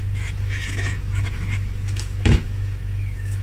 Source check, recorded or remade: remade